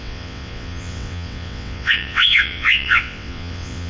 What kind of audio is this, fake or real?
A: fake